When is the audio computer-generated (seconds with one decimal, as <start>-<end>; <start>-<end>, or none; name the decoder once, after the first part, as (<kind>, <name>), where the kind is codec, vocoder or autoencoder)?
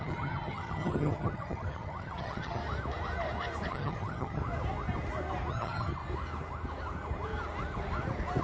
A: 0.0-2.6 (vocoder, HiFi-GAN); 3.7-4.4; 5.5-6.0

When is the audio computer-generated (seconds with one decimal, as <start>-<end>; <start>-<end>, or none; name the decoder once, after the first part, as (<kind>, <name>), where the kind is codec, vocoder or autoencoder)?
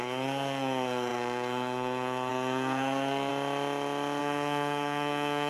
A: 0.0-3.3 (codec, SNAC); 4.2-5.5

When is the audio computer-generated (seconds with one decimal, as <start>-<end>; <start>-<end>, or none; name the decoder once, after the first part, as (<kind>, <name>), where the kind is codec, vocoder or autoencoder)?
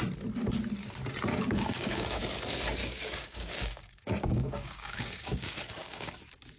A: 1.3-2.2 (codec, DAC); 2.8-6.1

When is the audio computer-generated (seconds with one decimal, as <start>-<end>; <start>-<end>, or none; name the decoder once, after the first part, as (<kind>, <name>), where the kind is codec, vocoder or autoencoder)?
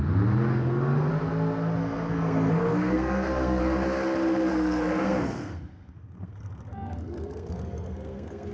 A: 0.5-1.1 (codec, SNAC); 1.8-3.6; 4.5-8.5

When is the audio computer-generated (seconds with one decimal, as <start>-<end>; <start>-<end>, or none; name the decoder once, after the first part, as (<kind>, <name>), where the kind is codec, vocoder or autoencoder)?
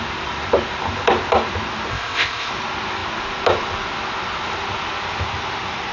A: 1.9-2.5 (codec, ZipCodec)